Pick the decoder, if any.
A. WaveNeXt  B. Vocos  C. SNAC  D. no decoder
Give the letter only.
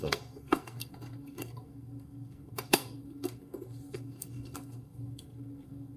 C